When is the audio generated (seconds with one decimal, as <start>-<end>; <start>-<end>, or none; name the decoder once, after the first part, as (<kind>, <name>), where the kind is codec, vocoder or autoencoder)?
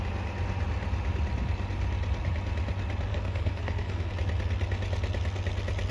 3.1-4.1 (codec, SNAC)